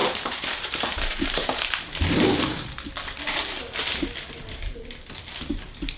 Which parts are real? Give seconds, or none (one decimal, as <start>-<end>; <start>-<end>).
3.6-6.0